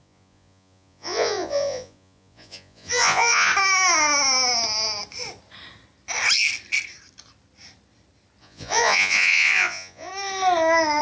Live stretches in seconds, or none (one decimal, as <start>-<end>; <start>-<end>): 3.5-8.4; 10.1-11.0